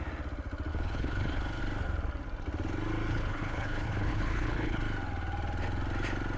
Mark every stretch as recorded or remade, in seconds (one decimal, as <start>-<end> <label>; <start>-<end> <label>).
0.0-0.7 recorded; 0.7-1.6 remade; 1.6-3.1 recorded; 3.1-4.8 remade; 4.8-6.4 recorded